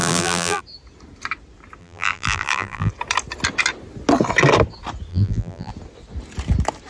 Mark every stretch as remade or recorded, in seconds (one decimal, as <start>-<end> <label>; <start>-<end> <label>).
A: 0.0-0.6 remade; 0.6-1.8 recorded; 1.8-2.9 remade; 2.9-5.1 recorded; 5.1-5.7 remade; 5.7-6.9 recorded